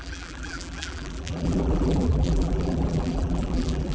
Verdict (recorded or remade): remade